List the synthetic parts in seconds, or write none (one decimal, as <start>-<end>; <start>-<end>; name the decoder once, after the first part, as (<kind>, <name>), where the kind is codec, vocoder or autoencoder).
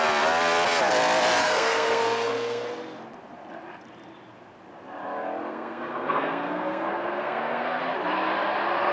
1.4-2.7 (codec, SNAC); 5.5-7.8